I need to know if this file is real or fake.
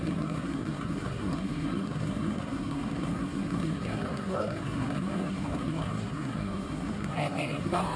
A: fake